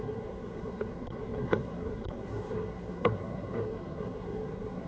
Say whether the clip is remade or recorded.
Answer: remade